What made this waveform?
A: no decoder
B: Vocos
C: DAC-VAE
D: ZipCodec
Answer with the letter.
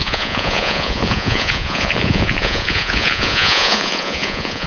B